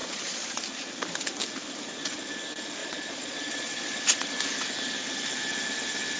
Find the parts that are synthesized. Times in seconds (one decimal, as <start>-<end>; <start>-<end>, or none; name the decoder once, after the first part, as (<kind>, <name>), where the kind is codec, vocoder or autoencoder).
0.0-0.6 (vocoder, Vocos); 2.8-4.3